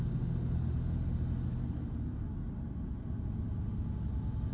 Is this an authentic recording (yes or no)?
yes